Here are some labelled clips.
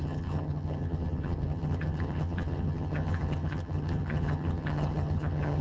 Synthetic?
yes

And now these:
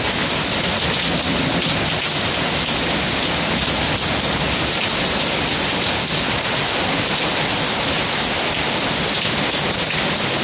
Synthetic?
no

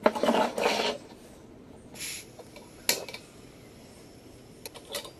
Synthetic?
no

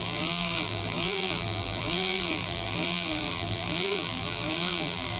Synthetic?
yes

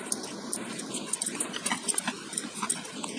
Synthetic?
no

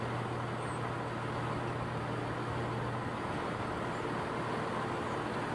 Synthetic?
no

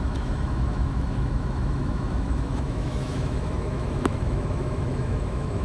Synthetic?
yes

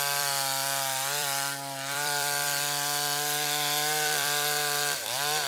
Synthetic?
yes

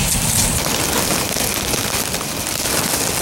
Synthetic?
no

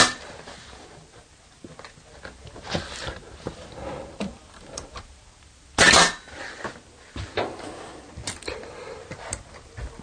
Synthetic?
no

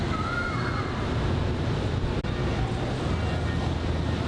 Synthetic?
no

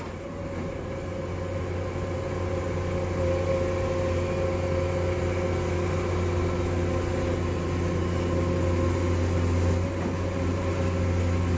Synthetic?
no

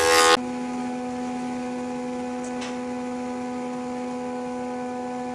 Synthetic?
no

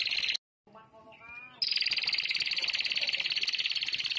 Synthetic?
no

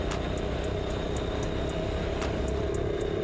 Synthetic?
no